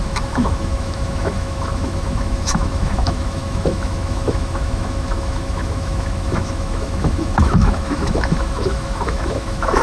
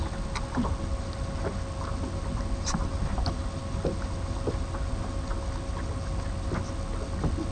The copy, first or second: first